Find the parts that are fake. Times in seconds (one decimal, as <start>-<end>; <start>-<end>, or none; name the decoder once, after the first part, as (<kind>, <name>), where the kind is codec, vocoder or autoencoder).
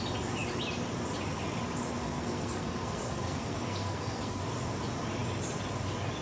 2.0-4.4 (codec, SNAC)